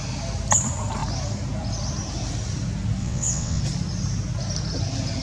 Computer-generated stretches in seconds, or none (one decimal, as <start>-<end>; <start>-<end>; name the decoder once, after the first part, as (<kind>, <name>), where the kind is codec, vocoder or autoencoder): 3.0-3.6 (vocoder, WaveNeXt)